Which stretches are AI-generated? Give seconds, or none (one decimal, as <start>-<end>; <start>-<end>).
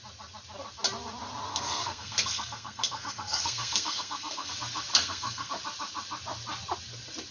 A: 1.5-4.5; 4.9-5.5